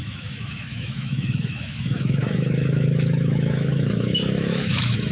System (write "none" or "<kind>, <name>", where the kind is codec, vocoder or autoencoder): autoencoder, DAC-VAE